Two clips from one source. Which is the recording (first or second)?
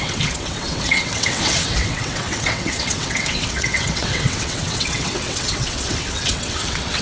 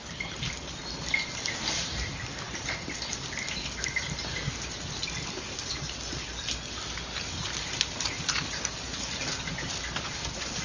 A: second